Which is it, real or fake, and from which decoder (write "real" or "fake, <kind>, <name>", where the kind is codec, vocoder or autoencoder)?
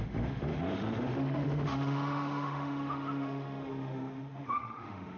fake, autoencoder, DAC-VAE